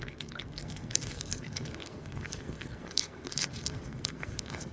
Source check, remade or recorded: remade